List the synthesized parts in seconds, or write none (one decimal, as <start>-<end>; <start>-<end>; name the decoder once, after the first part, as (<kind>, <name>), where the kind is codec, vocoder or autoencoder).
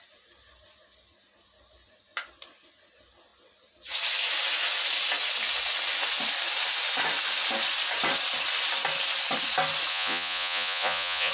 9.9-11.3 (vocoder, Vocos)